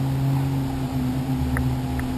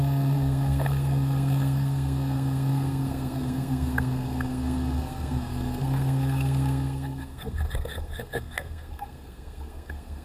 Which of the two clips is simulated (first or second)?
second